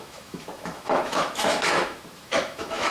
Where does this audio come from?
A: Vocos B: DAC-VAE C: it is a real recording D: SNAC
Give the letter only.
B